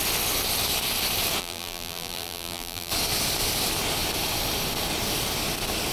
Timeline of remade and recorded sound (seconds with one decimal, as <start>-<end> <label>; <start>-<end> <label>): 0.0-1.4 recorded; 1.4-2.9 remade; 2.9-5.9 recorded